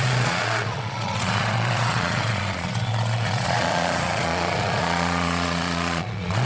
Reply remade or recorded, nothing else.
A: remade